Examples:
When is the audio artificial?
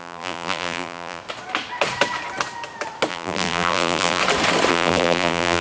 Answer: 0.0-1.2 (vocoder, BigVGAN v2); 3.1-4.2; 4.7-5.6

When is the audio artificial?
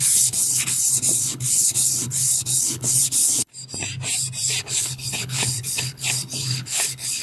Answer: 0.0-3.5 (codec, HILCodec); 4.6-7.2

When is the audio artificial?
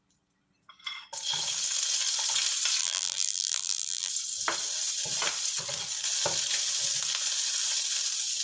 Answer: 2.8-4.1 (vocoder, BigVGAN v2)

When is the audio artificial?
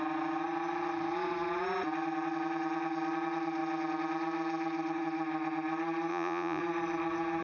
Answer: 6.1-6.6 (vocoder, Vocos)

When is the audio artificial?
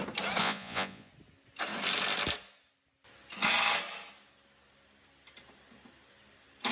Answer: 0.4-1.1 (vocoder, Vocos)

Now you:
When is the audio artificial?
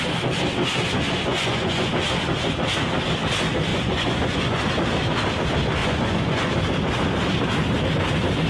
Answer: 1.3-1.9 (vocoder, Vocos); 3.7-4.6; 5.8-6.5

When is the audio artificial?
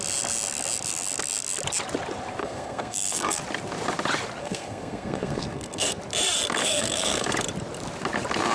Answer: 2.4-3.4 (codec, SNAC); 4.4-6.0; 6.6-7.3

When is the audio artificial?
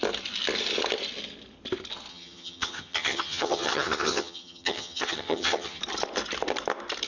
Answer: 2.1-5.8 (vocoder, HiFi-GAN)